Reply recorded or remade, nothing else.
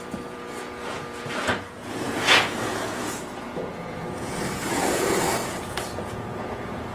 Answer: remade